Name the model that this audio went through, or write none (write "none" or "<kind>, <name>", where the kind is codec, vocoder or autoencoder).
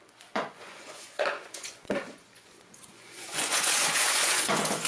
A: vocoder, Vocos